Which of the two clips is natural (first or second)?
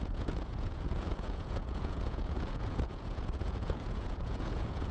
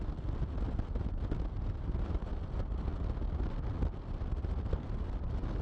second